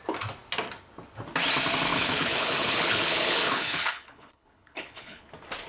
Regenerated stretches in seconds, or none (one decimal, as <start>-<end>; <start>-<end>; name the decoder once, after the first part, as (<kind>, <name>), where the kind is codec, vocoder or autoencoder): 1.9-5.3 (codec, HILCodec)